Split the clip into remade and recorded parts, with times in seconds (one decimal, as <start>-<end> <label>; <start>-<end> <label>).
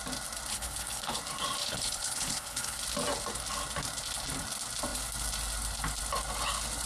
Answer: 0.0-0.5 recorded; 0.5-1.2 remade; 1.2-1.6 recorded; 1.6-2.8 remade; 2.8-6.8 recorded